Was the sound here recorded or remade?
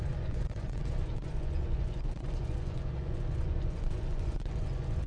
remade